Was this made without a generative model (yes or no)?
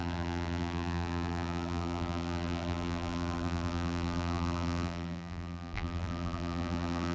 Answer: no